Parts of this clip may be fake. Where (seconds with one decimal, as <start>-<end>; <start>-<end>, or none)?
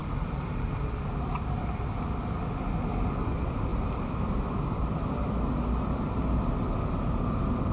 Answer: none